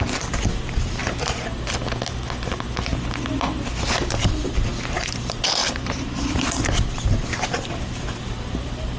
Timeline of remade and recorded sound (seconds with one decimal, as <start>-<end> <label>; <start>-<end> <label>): 0.0-1.0 remade; 1.0-3.8 recorded; 3.8-9.0 remade